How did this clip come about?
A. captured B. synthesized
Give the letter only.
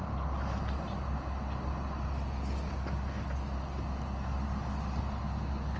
A